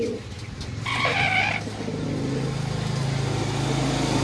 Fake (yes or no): no